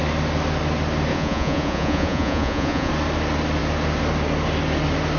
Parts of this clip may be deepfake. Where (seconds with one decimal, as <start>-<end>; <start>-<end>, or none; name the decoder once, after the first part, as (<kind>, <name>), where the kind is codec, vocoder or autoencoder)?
1.1-2.9 (vocoder, Vocos)